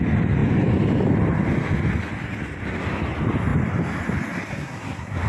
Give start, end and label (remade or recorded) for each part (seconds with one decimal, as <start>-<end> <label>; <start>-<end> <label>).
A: 0.0-4.5 recorded; 4.5-5.3 remade

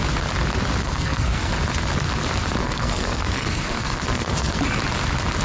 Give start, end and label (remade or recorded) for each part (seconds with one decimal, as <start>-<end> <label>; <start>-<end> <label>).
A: 0.0-0.8 recorded; 0.8-1.5 remade; 1.5-2.6 recorded; 2.6-4.6 remade; 4.6-5.4 recorded

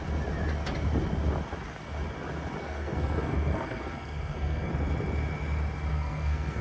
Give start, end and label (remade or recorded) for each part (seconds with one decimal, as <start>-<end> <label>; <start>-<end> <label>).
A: 0.0-2.6 recorded; 2.6-4.7 remade; 4.7-5.9 recorded; 5.9-6.6 remade

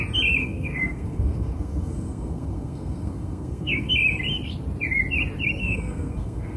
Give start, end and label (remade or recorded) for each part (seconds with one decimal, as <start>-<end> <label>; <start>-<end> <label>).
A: 0.0-0.4 recorded; 0.4-3.9 remade; 3.9-5.6 recorded; 5.6-6.6 remade

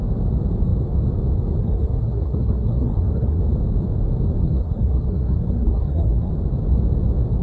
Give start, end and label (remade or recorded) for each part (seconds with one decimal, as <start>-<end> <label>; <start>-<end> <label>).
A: 0.0-1.6 recorded; 1.6-3.4 remade; 3.4-4.4 recorded; 4.4-6.3 remade; 6.3-7.4 recorded